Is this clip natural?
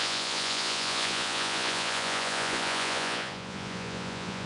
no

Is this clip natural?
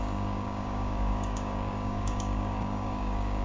no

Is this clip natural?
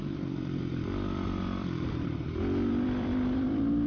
no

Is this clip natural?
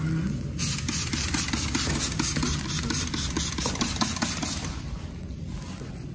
yes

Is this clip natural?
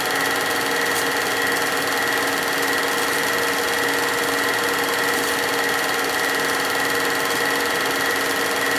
yes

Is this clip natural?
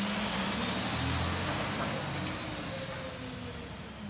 yes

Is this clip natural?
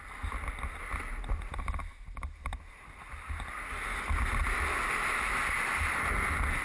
yes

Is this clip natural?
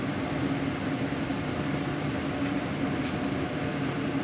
yes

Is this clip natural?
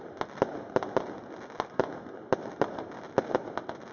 yes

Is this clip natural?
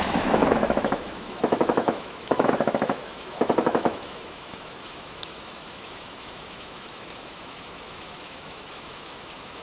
no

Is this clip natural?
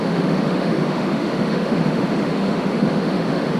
no